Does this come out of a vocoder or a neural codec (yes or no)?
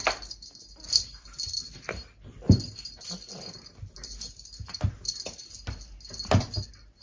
no